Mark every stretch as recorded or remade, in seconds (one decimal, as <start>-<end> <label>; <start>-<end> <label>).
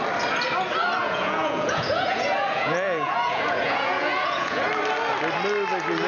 0.0-1.0 recorded; 1.0-4.7 remade; 4.7-6.1 recorded